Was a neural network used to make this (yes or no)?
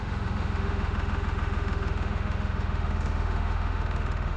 yes